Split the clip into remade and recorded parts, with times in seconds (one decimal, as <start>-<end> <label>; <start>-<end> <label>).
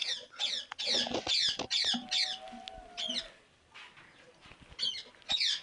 0.0-5.6 recorded